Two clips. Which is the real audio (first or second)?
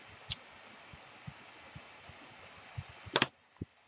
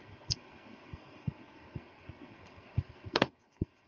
first